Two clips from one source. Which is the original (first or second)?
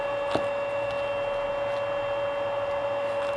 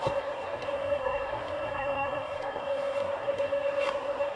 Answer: first